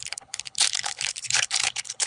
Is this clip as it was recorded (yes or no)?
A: no